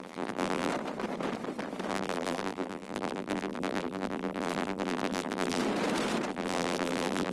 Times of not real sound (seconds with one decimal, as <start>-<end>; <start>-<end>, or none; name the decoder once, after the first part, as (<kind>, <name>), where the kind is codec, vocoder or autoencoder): 0.0-0.7 (vocoder, BigVGAN v2); 1.9-5.6; 6.3-7.3